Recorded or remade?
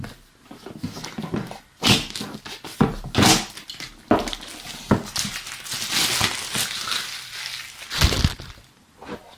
recorded